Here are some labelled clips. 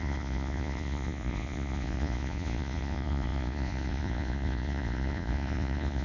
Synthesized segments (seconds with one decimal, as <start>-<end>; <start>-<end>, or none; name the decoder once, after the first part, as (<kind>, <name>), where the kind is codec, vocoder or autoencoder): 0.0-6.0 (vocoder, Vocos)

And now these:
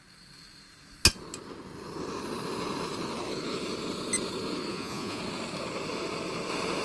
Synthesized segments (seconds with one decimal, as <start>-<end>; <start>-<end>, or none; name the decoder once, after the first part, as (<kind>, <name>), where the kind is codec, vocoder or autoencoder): 4.7-5.2 (vocoder, Vocos)

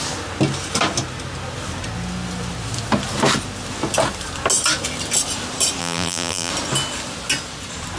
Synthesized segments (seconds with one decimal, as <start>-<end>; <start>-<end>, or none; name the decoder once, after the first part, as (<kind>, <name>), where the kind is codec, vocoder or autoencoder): 5.8-6.5 (vocoder, BigVGAN v2)

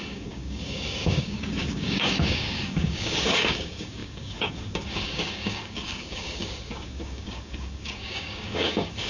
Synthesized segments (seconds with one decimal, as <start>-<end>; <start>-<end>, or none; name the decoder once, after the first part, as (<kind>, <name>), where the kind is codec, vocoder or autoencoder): 0.0-9.1 (codec, DAC)

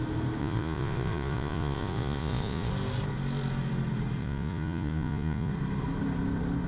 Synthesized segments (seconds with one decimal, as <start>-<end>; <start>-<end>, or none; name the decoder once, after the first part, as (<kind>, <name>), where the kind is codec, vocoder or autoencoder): 0.4-2.7 (vocoder, Vocos); 4.2-5.5

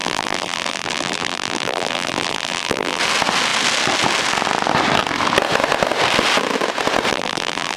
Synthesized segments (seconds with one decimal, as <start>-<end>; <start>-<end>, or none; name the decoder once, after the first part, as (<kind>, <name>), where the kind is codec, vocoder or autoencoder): 0.0-3.0 (vocoder, BigVGAN v2); 7.1-7.8

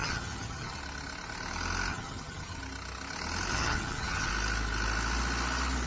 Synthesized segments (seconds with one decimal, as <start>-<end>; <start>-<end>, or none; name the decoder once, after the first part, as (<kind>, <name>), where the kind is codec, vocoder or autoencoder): 0.0-0.8 (vocoder, HiFi-GAN); 1.9-2.6; 3.5-4.3